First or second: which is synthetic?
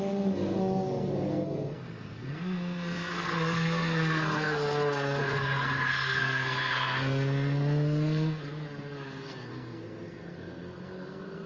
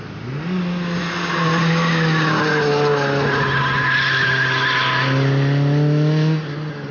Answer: first